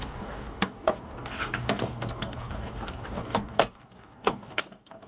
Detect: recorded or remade remade